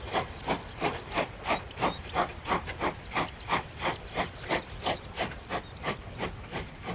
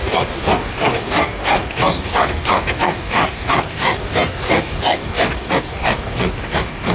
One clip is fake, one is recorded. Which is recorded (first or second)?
first